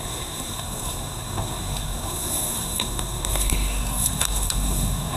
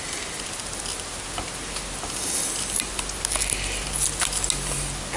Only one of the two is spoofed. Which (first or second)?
first